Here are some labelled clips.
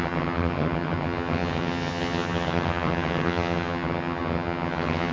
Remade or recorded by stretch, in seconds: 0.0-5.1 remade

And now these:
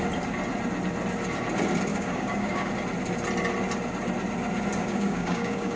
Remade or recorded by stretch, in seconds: 0.0-1.9 recorded; 1.9-2.7 remade; 2.7-4.8 recorded; 4.8-5.8 remade

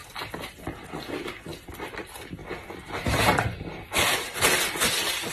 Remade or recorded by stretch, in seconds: 0.0-2.4 remade; 2.4-2.9 recorded; 2.9-3.3 remade; 3.3-5.3 recorded

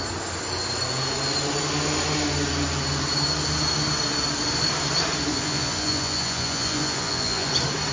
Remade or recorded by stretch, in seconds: 0.0-5.3 recorded; 5.3-7.5 remade; 7.5-7.9 recorded

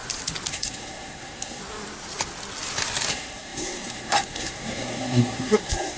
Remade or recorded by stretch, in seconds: 0.0-0.5 recorded; 0.5-1.6 remade; 1.6-3.1 recorded; 3.1-6.0 remade

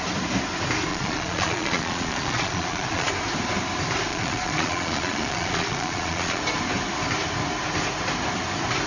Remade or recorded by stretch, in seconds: 0.0-0.9 recorded; 0.9-3.1 remade; 3.1-4.1 recorded; 4.1-6.4 remade; 6.4-8.9 recorded

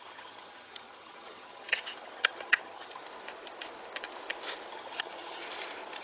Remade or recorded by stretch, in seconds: 0.0-3.0 remade; 3.0-4.7 recorded; 4.7-5.4 remade; 5.4-6.0 recorded